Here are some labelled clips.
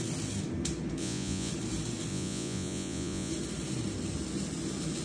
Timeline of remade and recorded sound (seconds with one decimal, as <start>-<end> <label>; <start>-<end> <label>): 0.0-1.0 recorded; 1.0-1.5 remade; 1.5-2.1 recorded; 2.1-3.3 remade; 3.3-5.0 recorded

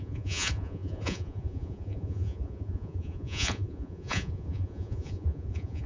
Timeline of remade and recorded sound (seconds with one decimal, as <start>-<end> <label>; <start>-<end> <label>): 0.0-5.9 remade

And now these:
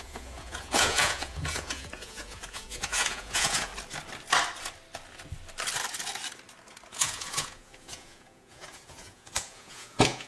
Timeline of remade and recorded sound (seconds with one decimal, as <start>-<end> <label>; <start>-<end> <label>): 0.0-3.7 remade; 3.7-6.9 recorded; 6.9-10.3 remade

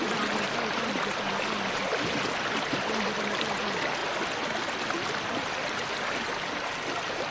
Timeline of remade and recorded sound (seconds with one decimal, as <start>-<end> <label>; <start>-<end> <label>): 0.0-7.3 recorded